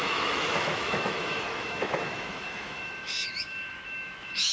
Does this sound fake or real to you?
fake